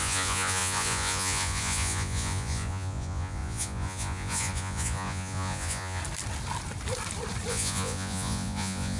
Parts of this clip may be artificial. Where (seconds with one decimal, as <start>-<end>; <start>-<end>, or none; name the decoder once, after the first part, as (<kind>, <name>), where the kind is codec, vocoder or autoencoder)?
0.0-6.0 (vocoder, Vocos); 7.5-9.0